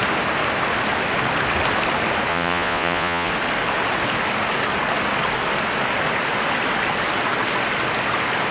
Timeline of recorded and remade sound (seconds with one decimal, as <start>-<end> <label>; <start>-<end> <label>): 0.0-2.3 recorded; 2.3-3.3 remade; 3.3-8.5 recorded